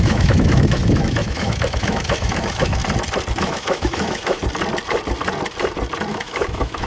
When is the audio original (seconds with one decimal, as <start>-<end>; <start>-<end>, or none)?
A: 2.8-3.4; 4.4-6.1